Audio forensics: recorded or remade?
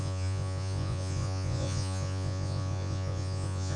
remade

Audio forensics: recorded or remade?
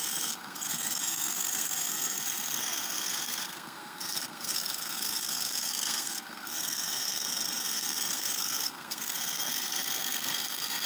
remade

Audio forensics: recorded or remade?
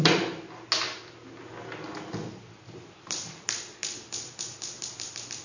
recorded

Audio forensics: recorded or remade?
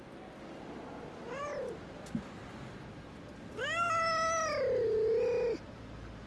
recorded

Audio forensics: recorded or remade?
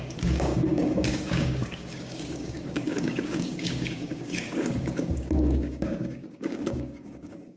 remade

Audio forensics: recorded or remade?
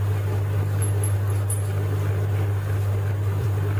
recorded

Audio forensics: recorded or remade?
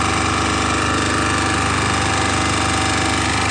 recorded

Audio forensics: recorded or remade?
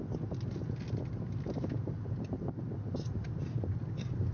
recorded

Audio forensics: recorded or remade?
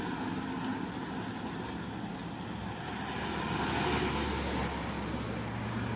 recorded